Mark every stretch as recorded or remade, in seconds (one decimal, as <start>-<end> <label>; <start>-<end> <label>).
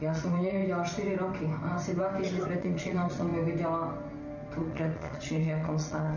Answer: 0.0-0.6 remade; 0.6-2.6 recorded; 2.6-3.3 remade; 3.3-4.6 recorded; 4.6-6.2 remade